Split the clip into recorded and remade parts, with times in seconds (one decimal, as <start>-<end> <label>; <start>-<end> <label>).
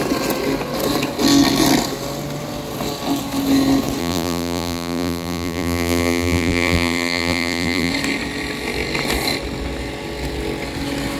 0.0-4.0 recorded; 4.0-7.9 remade; 7.9-11.2 recorded